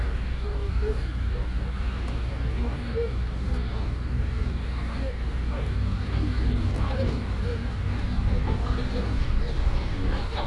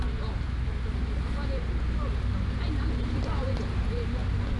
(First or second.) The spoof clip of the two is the first